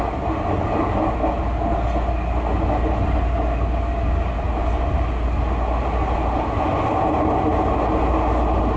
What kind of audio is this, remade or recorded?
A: recorded